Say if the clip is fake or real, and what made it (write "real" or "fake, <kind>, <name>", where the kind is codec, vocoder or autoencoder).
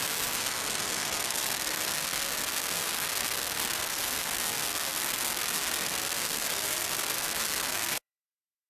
fake, codec, SNAC